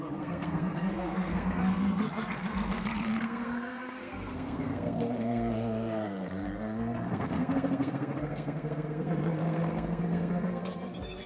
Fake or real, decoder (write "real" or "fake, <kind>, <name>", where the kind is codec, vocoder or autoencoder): fake, codec, SNAC